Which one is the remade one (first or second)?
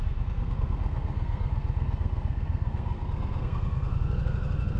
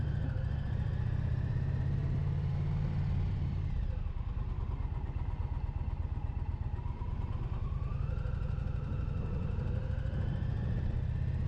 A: first